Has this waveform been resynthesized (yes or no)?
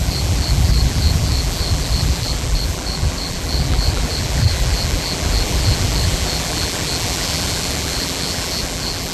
yes